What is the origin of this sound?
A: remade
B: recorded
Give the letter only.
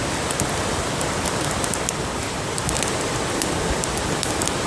B